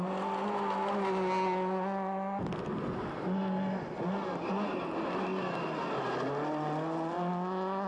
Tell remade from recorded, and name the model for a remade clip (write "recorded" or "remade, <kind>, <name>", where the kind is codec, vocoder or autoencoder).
recorded